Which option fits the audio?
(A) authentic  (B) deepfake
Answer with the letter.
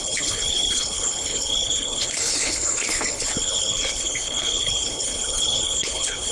B